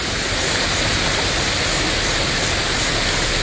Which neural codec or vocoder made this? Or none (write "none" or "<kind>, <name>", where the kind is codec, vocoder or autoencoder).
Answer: none